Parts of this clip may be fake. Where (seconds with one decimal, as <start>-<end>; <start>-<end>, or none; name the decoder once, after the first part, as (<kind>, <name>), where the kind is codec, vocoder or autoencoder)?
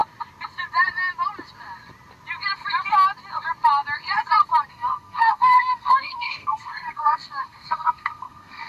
4.7-8.7 (codec, SNAC)